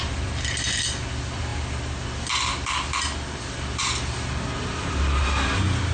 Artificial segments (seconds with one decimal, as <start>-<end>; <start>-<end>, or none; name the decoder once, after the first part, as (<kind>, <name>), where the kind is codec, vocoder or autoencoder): none